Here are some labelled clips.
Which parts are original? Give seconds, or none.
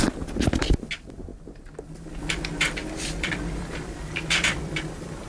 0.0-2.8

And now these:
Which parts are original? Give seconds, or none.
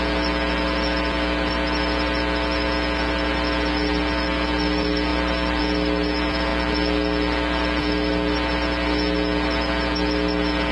0.0-5.1; 5.6-10.7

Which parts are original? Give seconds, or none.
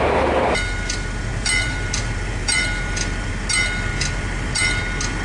0.0-1.3; 3.3-3.9; 4.8-5.2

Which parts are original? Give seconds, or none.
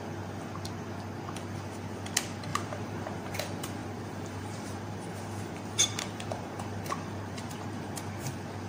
0.0-2.5; 3.4-3.8; 7.9-8.7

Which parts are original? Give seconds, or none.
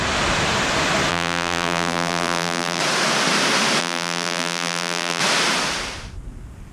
0.0-1.1; 2.8-3.8; 5.2-6.7